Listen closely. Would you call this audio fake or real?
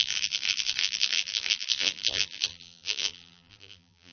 fake